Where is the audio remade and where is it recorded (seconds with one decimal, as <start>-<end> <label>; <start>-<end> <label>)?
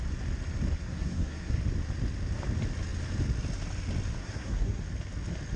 0.0-0.8 recorded; 0.8-1.6 remade; 1.6-4.2 recorded; 4.2-4.8 remade; 4.8-5.6 recorded